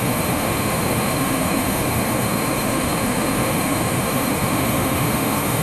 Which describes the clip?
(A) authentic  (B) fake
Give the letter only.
B